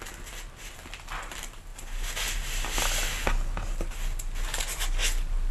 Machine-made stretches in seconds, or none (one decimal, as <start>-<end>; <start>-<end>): none